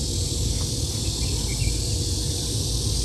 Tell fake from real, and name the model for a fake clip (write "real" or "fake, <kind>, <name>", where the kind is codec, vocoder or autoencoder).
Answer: real